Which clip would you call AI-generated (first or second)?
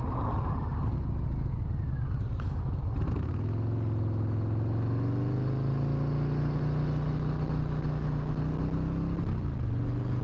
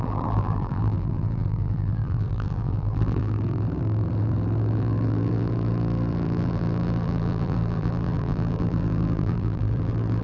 second